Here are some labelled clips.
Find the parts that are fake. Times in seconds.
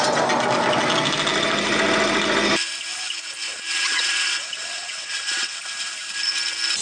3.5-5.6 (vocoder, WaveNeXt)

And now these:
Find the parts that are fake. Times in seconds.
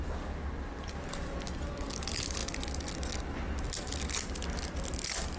none